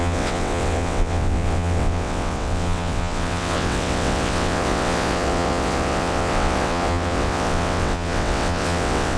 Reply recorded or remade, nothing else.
remade